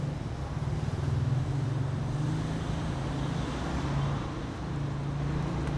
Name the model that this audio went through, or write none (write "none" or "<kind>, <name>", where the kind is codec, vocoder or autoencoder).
none